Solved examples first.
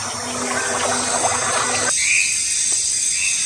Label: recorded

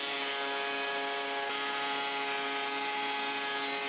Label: recorded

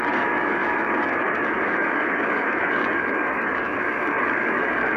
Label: remade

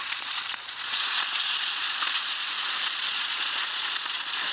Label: remade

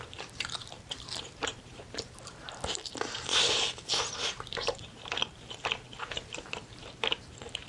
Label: remade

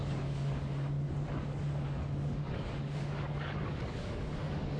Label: remade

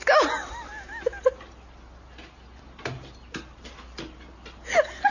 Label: recorded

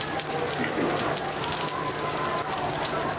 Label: recorded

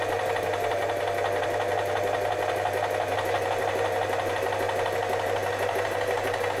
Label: recorded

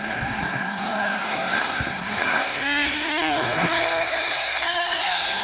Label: remade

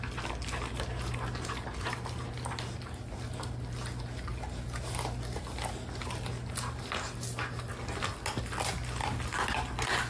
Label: recorded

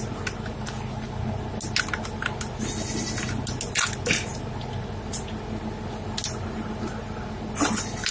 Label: recorded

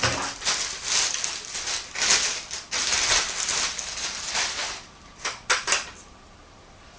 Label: recorded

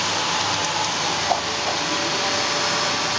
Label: recorded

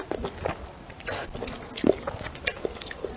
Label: recorded